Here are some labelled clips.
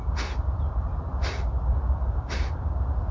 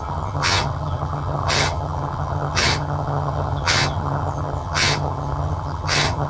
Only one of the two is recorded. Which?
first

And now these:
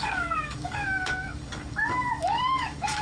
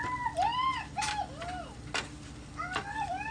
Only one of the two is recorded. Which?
second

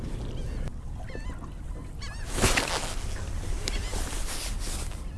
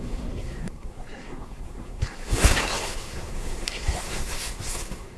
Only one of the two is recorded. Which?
first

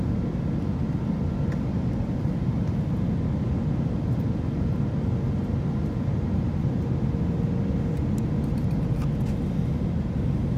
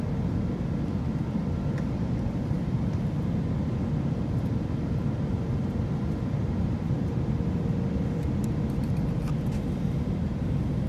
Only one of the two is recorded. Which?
first